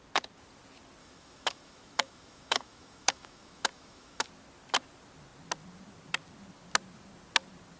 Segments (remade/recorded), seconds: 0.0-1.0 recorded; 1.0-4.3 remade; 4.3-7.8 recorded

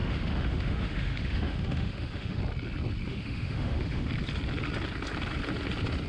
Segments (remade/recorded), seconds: 0.0-2.4 remade; 2.4-3.1 recorded; 3.1-4.1 remade; 4.1-6.1 recorded

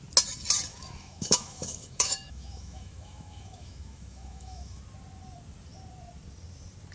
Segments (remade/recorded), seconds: 0.0-0.7 recorded; 0.7-4.8 remade; 4.8-6.9 recorded